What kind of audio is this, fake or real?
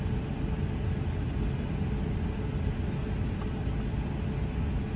real